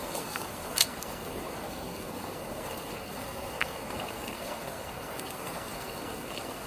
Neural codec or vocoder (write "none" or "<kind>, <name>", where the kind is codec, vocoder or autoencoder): codec, SNAC